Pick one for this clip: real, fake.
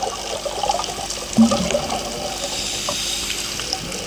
real